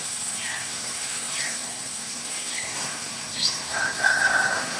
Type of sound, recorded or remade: remade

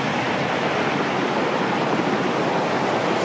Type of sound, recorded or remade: recorded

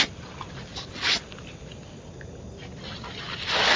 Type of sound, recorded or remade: recorded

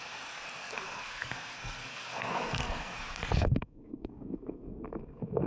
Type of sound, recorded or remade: remade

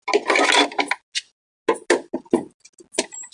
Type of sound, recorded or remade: recorded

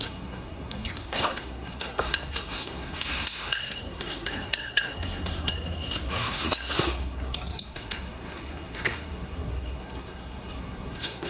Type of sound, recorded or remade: remade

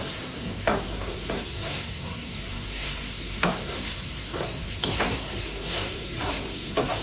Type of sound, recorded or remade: remade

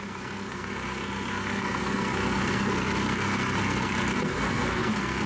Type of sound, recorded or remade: remade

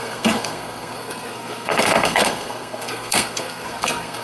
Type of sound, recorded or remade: remade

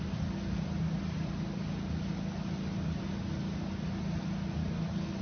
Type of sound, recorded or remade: recorded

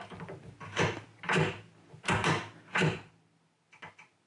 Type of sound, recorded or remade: recorded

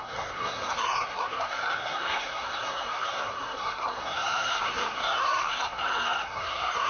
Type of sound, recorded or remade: remade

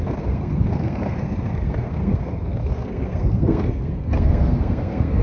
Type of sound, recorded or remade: remade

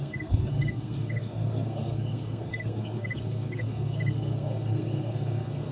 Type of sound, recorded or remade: remade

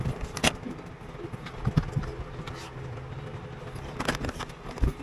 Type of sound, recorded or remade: recorded